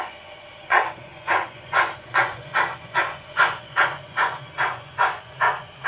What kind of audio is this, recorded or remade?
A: remade